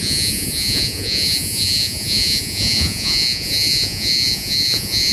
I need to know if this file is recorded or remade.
remade